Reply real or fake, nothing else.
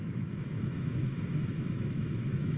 fake